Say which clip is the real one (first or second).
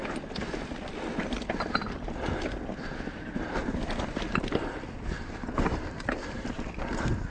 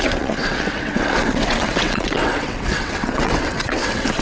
first